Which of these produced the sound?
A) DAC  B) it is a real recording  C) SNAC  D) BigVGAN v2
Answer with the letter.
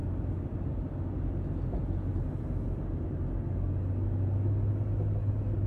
B